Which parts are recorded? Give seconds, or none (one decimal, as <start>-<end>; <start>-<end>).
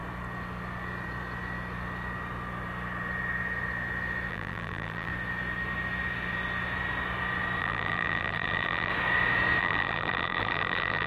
0.0-4.3; 5.1-7.6; 8.9-9.6